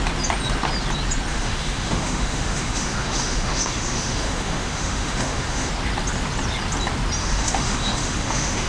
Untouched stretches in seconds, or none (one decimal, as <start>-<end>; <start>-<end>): 0.0-1.3; 5.7-7.2